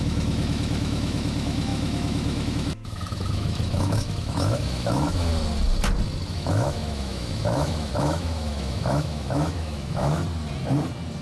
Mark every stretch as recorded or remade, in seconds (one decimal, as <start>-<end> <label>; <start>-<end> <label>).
0.0-5.3 remade; 5.3-6.3 recorded; 6.3-10.2 remade; 10.2-11.2 recorded